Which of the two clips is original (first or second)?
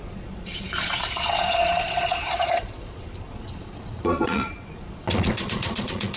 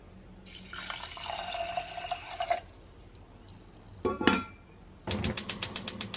second